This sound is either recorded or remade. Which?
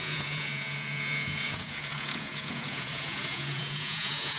remade